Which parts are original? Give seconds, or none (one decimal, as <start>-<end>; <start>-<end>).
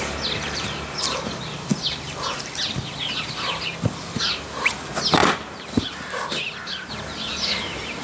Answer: 0.0-8.0